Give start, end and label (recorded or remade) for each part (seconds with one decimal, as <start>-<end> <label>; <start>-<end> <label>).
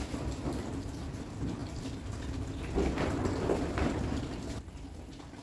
0.0-5.4 recorded